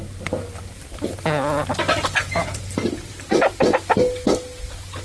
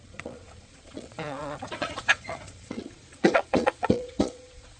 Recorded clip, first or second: first